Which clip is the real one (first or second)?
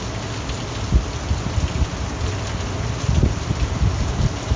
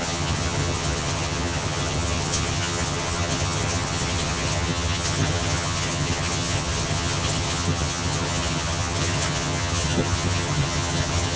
first